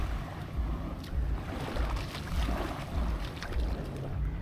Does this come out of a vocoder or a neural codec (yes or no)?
no